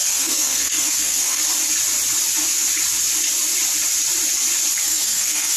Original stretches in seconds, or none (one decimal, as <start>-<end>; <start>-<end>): 1.4-4.8